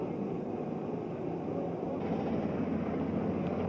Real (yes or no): yes